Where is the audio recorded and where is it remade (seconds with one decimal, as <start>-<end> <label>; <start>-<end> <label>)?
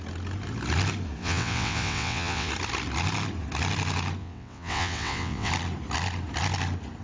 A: 0.0-1.2 recorded; 1.2-2.5 remade; 2.5-4.2 recorded; 4.2-5.5 remade; 5.5-7.0 recorded